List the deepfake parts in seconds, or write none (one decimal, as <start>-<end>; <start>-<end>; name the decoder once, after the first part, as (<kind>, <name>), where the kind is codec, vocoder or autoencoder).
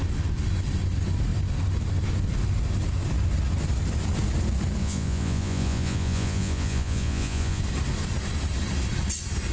4.8-7.6 (vocoder, Vocos)